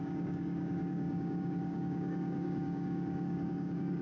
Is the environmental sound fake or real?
fake